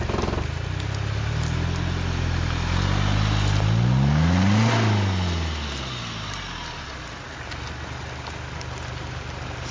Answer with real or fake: real